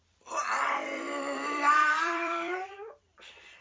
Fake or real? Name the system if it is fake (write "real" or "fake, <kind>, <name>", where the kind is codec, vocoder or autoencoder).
fake, vocoder, BigVGAN v2